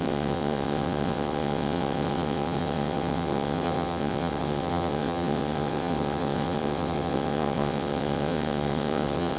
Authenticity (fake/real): fake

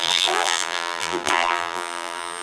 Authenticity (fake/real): fake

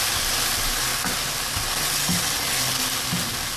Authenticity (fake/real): real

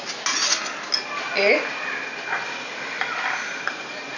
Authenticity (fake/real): real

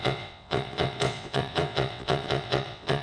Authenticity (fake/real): fake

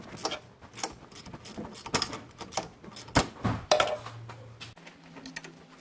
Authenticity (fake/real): real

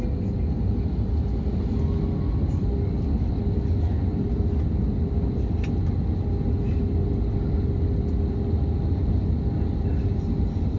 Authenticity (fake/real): real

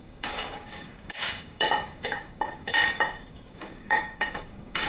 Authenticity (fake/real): fake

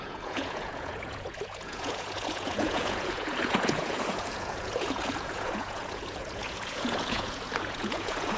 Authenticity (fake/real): fake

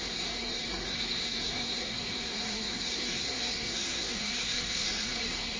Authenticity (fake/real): fake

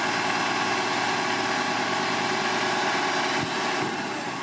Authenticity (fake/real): real